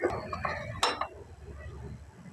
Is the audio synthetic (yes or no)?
no